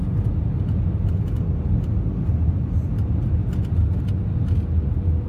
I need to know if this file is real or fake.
real